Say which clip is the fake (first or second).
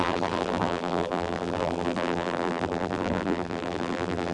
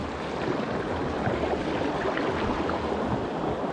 first